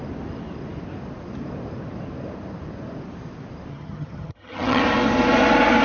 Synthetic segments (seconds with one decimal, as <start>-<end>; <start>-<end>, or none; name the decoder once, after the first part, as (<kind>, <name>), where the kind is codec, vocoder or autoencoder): 3.7-4.8 (vocoder, HiFi-GAN)